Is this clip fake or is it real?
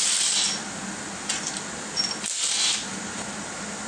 real